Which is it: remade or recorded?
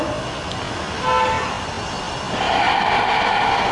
recorded